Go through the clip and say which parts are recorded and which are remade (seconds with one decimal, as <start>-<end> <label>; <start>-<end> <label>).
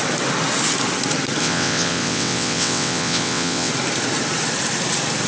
0.0-1.4 recorded; 1.4-3.7 remade; 3.7-5.3 recorded